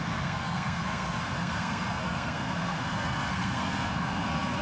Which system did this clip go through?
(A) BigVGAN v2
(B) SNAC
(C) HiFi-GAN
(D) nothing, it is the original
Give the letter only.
B